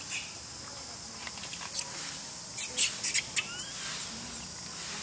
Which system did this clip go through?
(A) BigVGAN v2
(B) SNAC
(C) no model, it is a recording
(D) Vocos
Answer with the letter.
C